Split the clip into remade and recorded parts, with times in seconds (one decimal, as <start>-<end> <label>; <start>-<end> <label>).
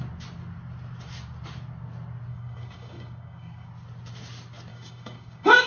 0.0-2.3 recorded; 2.3-3.7 remade; 3.7-4.7 recorded; 4.7-5.7 remade